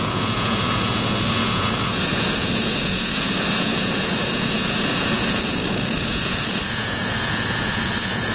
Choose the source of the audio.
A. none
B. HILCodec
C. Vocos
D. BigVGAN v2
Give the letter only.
C